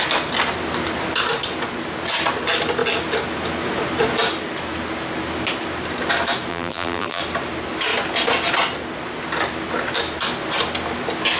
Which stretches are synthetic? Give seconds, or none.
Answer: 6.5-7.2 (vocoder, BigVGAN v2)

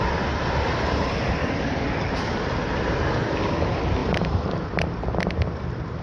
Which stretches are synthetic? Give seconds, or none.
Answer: 1.4-2.1 (codec, DAC)

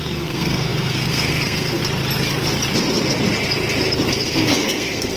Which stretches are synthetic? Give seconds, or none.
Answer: 0.0-1.8 (codec, SNAC); 4.1-5.2

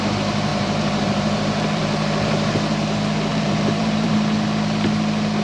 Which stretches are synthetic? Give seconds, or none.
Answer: 0.5-1.8 (vocoder, BigVGAN v2); 3.3-4.1

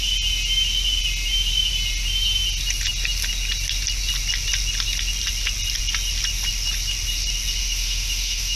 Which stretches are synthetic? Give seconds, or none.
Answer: 7.6-8.6 (autoencoder, DAC-VAE)

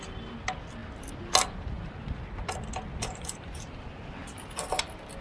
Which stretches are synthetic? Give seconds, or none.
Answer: none

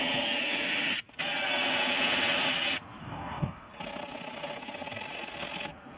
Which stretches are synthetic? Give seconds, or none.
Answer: 3.0-3.7 (codec, DAC)